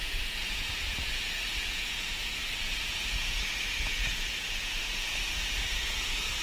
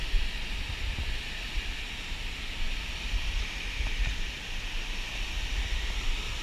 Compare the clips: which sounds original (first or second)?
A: second